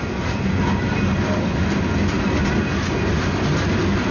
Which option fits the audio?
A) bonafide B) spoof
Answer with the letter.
A